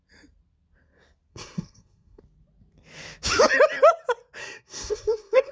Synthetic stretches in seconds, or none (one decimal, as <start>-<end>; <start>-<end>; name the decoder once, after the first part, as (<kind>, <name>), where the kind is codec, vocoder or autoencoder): 1.3-2.2 (codec, SNAC); 4.4-5.5